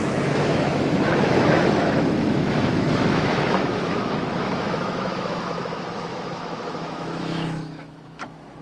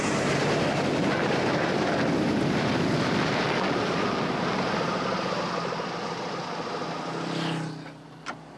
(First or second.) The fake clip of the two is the first